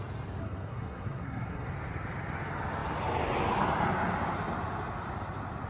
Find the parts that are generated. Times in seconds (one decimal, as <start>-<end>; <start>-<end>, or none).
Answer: 0.4-1.7